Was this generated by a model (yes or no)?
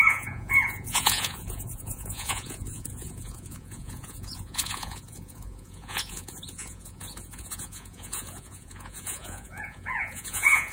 yes